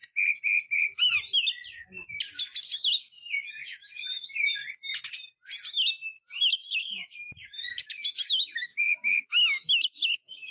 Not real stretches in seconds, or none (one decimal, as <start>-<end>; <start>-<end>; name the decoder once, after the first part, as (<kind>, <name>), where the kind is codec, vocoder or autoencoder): 3.0-4.6 (autoencoder, DAC-VAE); 6.5-10.5